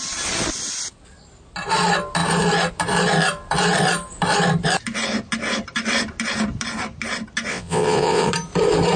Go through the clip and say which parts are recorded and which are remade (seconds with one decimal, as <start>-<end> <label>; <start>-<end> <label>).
0.0-7.5 recorded; 7.5-8.3 remade; 8.3-9.0 recorded

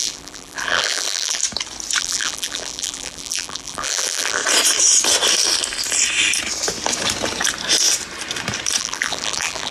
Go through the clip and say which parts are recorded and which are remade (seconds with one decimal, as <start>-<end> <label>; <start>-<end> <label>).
0.0-1.4 remade; 1.4-2.0 recorded; 2.0-4.4 remade; 4.4-8.8 recorded; 8.8-9.7 remade

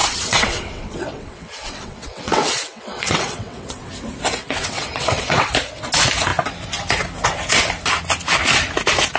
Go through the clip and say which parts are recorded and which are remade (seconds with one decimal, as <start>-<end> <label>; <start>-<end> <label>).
0.0-3.9 remade; 3.9-4.3 recorded; 4.3-5.5 remade; 5.5-9.2 recorded

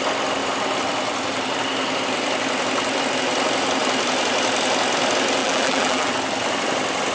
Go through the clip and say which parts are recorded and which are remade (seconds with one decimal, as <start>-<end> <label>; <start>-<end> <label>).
0.0-5.4 recorded; 5.4-6.1 remade; 6.1-7.1 recorded